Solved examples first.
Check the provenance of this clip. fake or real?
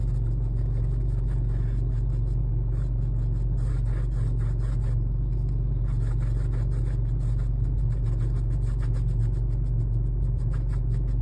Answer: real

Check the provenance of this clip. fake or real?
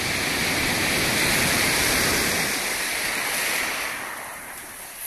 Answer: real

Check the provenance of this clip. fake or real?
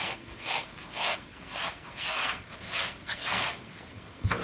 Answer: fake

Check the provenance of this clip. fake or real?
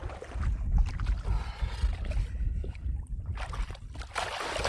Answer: real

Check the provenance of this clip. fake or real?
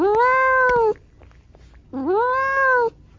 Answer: real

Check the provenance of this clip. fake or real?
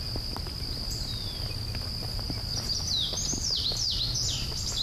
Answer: real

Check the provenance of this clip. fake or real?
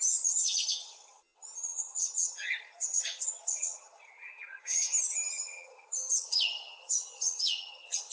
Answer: fake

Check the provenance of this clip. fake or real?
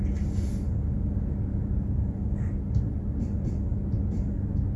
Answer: real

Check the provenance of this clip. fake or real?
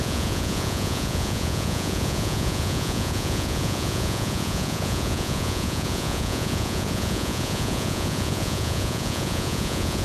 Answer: fake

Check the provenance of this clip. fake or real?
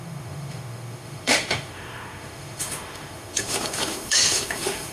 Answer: fake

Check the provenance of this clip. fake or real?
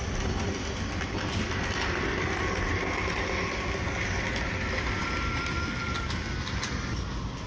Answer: real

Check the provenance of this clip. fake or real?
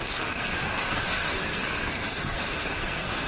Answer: fake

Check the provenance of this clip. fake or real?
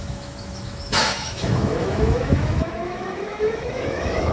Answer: fake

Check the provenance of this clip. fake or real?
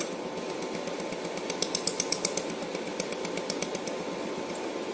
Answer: real